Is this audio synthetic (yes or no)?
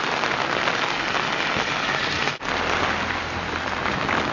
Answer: no